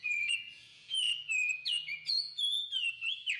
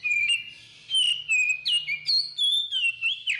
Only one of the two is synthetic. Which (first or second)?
first